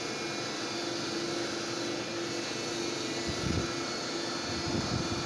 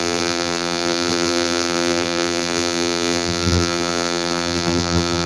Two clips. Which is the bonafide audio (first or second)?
first